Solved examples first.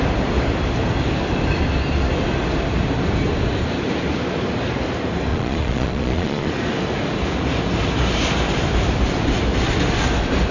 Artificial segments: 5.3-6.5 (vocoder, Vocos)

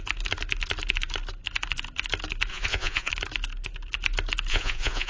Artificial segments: 2.5-3.1 (vocoder, Vocos); 4.5-5.1